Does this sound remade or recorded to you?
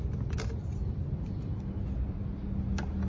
recorded